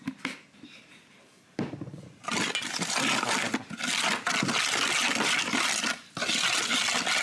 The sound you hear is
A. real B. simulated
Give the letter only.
A